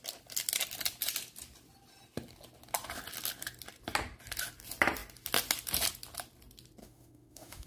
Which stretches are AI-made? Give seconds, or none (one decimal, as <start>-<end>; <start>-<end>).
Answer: 6.8-7.7